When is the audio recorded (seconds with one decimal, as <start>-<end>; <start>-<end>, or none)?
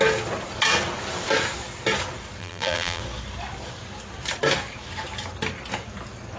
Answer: 0.0-2.4; 3.0-6.4